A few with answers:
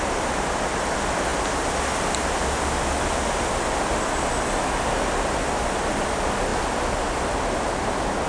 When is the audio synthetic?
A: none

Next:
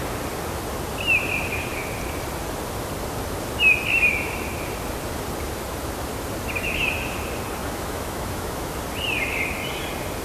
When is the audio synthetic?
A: 7.6-8.7

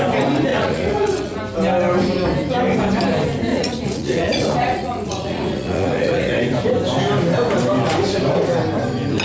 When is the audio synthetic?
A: 0.5-1.4; 3.5-6.4

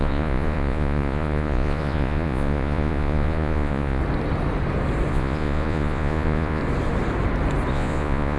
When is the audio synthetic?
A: 0.0-4.0; 5.1-6.6; 7.7-8.4

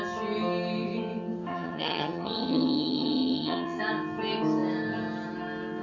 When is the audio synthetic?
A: 1.5-3.8

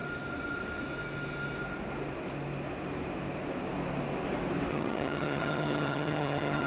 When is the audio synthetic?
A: 4.7-6.7